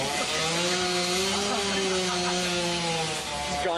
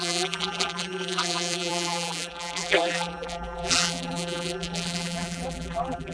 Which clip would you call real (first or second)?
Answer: first